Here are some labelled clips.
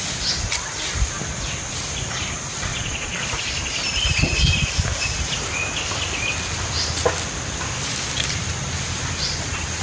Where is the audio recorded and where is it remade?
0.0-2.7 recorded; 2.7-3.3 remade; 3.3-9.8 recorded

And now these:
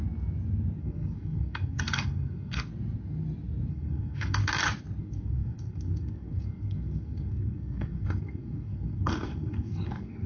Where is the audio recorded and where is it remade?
0.0-0.8 recorded; 0.8-2.7 remade; 2.7-3.7 recorded; 3.7-4.4 remade; 4.4-5.0 recorded; 5.0-10.3 remade

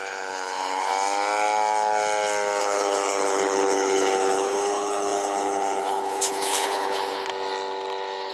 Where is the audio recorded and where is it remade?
0.0-0.9 remade; 0.9-2.6 recorded; 2.6-7.3 remade; 7.3-8.3 recorded

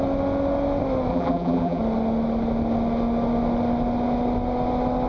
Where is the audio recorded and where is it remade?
0.0-1.1 recorded; 1.1-1.8 remade; 1.8-5.1 recorded